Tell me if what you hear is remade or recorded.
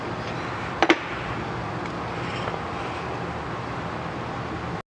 recorded